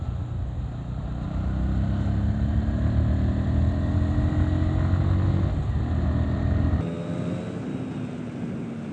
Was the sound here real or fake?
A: real